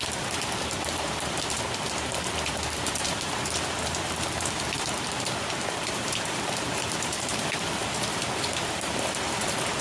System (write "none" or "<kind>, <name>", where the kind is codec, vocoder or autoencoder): vocoder, BigVGAN v2